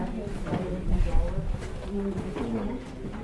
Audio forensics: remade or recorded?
recorded